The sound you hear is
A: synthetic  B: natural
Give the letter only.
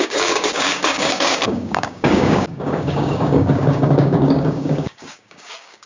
A